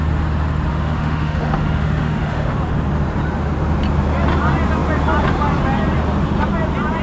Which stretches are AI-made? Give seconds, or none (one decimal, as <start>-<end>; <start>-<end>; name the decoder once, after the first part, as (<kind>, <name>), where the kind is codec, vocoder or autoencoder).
0.7-2.5 (autoencoder, DAC-VAE)